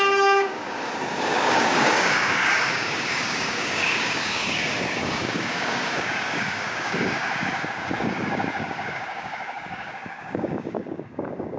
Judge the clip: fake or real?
fake